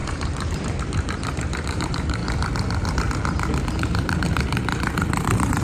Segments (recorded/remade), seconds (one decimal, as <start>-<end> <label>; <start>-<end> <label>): 0.0-2.2 remade; 2.2-3.7 recorded; 3.7-5.6 remade